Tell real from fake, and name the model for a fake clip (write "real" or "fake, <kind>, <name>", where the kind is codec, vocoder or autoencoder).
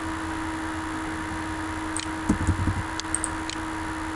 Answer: real